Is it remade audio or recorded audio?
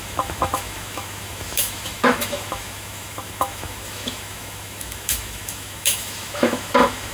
remade